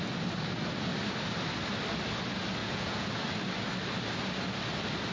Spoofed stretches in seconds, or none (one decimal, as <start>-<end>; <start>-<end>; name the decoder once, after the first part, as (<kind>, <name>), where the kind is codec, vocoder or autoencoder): 2.6-3.1 (vocoder, Vocos)

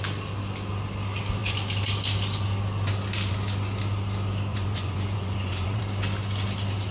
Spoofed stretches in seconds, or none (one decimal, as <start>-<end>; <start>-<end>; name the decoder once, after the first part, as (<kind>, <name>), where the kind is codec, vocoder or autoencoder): 4.5-5.8 (vocoder, Vocos)

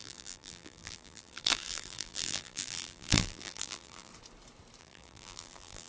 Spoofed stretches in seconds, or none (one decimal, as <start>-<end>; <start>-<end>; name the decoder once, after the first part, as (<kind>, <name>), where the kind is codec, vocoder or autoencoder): 0.0-4.1 (vocoder, BigVGAN v2); 4.8-5.9